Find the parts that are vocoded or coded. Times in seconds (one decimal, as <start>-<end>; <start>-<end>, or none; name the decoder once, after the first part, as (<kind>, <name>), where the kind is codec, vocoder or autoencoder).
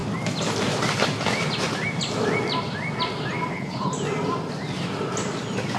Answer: 3.5-3.9 (codec, HILCodec)